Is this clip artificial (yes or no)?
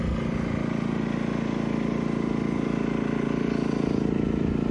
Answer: no